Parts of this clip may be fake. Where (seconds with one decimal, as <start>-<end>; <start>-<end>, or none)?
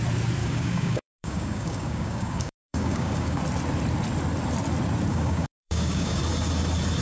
0.4-3.4; 5.1-6.2